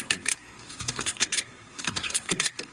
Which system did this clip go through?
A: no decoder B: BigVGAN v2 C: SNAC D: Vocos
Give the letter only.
C